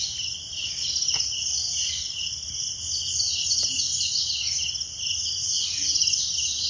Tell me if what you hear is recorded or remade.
recorded